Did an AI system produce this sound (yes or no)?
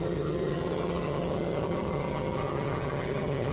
yes